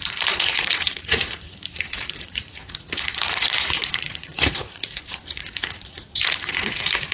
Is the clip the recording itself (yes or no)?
no